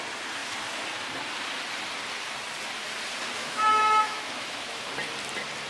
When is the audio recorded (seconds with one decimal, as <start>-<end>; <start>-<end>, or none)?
0.0-3.4; 4.9-5.7

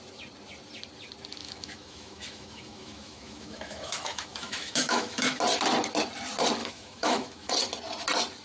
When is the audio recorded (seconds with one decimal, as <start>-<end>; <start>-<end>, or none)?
0.0-1.4; 5.4-6.6; 7.5-8.4

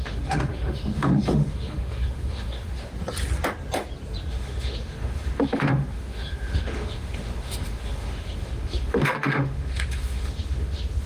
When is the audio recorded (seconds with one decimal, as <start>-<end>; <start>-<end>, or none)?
2.9-4.3

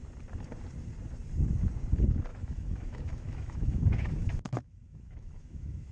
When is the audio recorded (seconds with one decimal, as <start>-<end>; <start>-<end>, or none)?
0.0-2.3

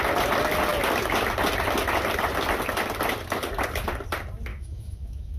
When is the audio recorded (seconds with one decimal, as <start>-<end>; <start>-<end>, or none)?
0.0-4.5

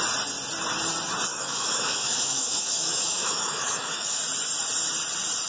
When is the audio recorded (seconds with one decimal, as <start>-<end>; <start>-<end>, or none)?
0.0-1.3; 4.2-5.5